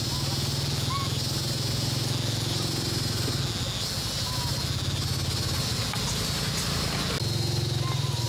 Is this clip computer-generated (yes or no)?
no